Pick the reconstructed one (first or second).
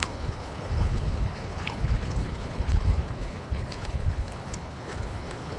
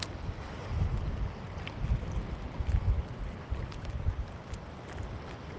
first